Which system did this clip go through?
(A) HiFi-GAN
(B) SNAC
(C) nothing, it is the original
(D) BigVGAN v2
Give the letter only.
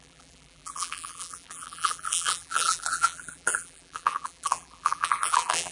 D